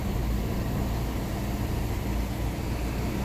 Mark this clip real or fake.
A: real